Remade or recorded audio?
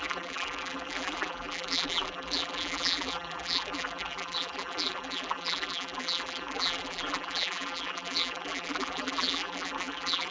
remade